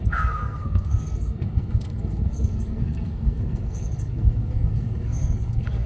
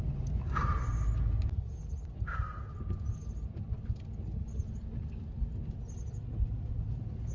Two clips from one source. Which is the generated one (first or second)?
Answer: first